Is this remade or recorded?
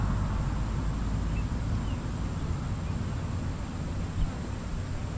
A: recorded